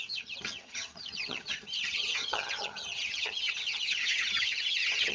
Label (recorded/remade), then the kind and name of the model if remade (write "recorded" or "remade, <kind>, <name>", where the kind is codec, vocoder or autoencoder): remade, vocoder, HiFi-GAN